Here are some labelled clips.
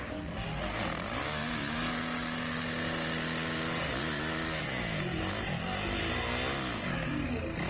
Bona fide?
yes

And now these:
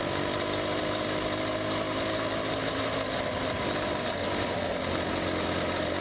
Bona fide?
yes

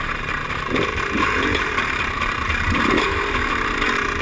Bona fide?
no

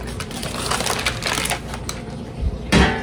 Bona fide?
yes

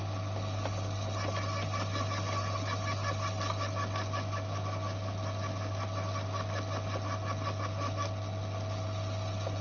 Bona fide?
yes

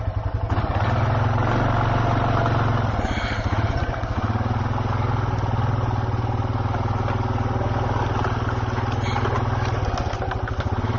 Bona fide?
yes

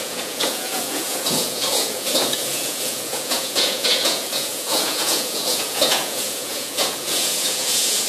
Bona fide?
no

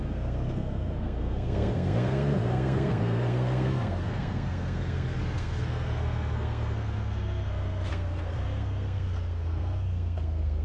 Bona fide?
no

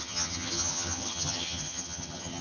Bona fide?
no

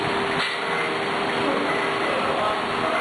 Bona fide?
yes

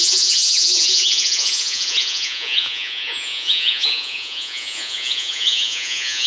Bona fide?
no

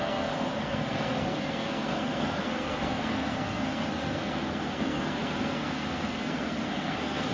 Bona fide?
no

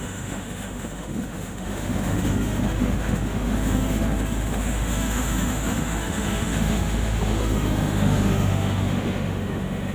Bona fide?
no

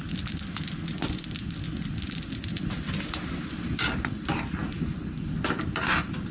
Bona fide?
yes